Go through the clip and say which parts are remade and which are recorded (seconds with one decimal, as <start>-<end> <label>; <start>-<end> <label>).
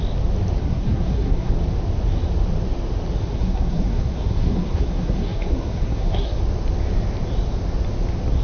0.0-0.6 recorded; 0.6-1.5 remade; 1.5-3.2 recorded; 3.2-6.4 remade; 6.4-8.4 recorded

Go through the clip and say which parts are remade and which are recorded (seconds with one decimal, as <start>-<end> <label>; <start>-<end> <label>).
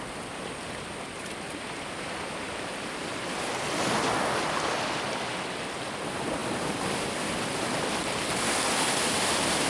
0.0-9.7 remade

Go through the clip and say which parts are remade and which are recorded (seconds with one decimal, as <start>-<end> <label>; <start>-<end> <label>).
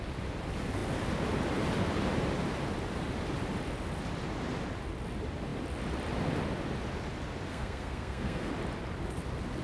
0.0-7.5 recorded; 7.5-8.5 remade; 8.5-9.6 recorded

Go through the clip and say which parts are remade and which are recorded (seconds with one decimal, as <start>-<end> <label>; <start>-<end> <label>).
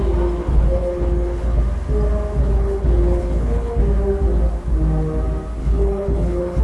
0.0-0.4 recorded; 0.4-1.6 remade; 1.6-2.4 recorded; 2.4-3.8 remade; 3.8-5.6 recorded; 5.6-6.6 remade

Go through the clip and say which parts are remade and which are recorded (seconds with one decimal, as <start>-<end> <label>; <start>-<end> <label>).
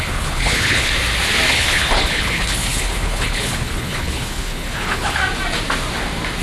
0.0-0.9 remade; 0.9-1.5 recorded; 1.5-5.2 remade; 5.2-6.4 recorded